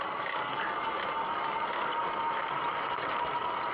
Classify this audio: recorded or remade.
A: recorded